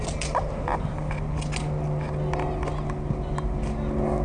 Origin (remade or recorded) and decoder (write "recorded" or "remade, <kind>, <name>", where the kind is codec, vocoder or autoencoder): recorded